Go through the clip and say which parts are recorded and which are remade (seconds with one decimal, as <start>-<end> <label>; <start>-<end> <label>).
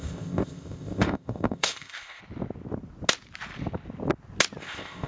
0.0-2.2 remade; 2.2-4.6 recorded; 4.6-5.1 remade